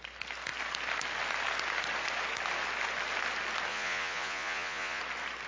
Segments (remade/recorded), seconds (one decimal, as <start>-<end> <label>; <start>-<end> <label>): 0.0-3.7 recorded; 3.7-5.0 remade; 5.0-5.5 recorded